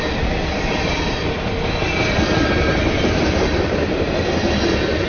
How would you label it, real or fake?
real